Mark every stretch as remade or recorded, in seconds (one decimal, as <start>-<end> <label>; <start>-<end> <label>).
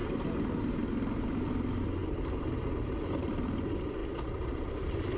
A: 0.0-1.2 recorded; 1.2-2.0 remade; 2.0-3.0 recorded; 3.0-5.2 remade